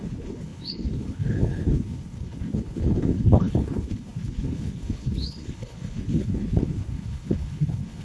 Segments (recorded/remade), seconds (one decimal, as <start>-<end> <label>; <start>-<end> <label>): 0.0-8.0 remade

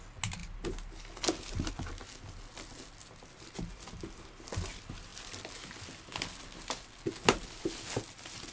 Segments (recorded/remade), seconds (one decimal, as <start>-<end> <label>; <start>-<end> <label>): 0.0-8.5 recorded